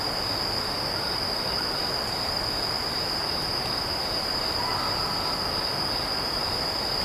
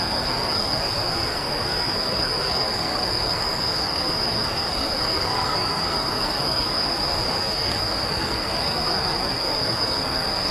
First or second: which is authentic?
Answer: first